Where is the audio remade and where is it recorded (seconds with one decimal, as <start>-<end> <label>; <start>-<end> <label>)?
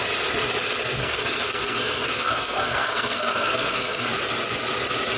0.0-1.0 recorded; 1.0-4.1 remade; 4.1-5.2 recorded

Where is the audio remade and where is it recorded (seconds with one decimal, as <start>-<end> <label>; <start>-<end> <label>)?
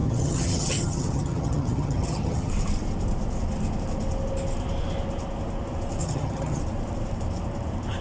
0.0-2.5 remade; 2.5-6.0 recorded; 6.0-6.6 remade; 6.6-8.0 recorded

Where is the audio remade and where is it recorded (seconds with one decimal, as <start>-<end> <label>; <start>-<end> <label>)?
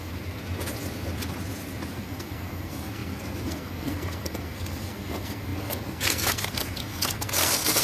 0.0-0.4 remade; 0.4-1.9 recorded; 1.9-7.8 remade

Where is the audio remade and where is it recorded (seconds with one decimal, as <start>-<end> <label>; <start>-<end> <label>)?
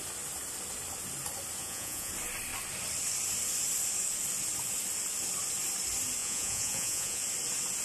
0.0-1.6 recorded; 1.6-2.1 remade; 2.1-6.2 recorded; 6.2-7.2 remade; 7.2-7.8 recorded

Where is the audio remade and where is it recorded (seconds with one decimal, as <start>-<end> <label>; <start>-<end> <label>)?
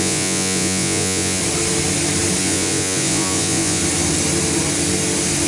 0.0-1.4 remade; 1.4-2.4 recorded; 2.4-3.8 remade; 3.8-5.5 recorded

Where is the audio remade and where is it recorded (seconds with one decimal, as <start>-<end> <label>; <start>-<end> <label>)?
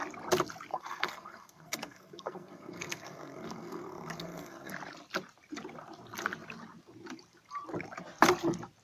0.0-0.7 recorded; 0.7-4.7 remade; 4.7-8.8 recorded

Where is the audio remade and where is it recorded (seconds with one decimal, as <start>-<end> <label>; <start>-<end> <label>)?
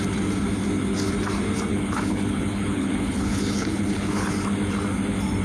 0.0-1.7 recorded; 1.7-4.3 remade; 4.3-5.4 recorded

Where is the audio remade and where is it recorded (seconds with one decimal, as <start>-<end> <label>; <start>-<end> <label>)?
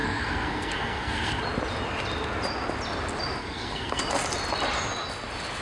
0.0-1.4 remade; 1.4-3.4 recorded; 3.4-4.0 remade; 4.0-5.6 recorded